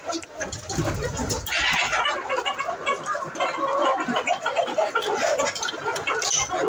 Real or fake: real